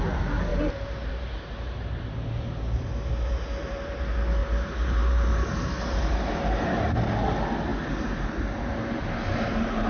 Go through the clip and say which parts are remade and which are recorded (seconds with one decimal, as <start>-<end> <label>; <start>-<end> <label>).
0.0-0.5 recorded; 0.5-4.0 remade; 4.0-4.4 recorded; 4.4-6.3 remade; 6.3-9.9 recorded